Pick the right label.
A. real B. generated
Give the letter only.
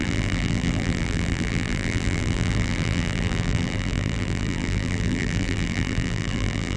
B